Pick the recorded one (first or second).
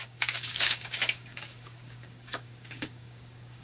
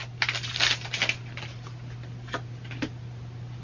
second